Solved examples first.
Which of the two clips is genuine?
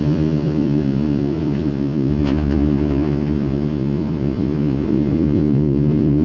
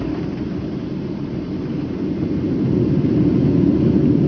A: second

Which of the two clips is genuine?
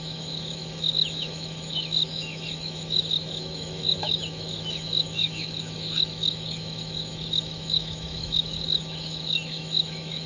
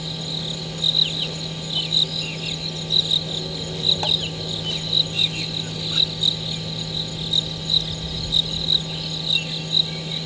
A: second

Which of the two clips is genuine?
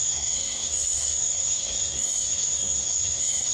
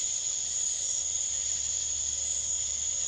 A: second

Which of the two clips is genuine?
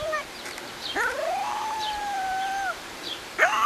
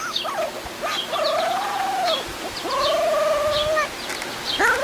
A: second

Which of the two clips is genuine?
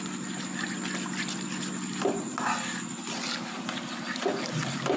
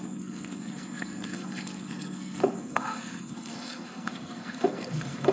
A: first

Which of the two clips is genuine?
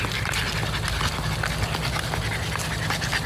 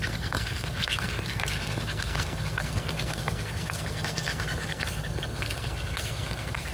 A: first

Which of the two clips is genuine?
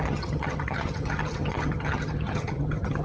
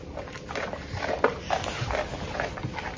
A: second